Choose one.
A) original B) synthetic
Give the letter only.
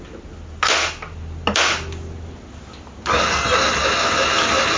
A